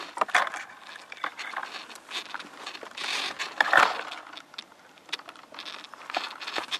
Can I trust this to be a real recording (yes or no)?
no